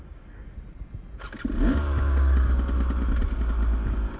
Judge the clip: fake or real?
real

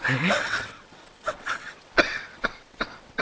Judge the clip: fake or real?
fake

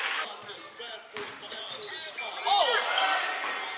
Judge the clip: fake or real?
real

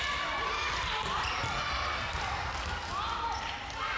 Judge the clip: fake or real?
real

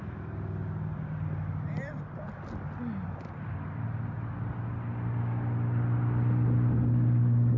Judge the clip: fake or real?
real